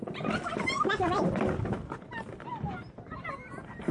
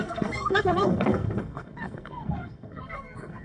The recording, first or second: first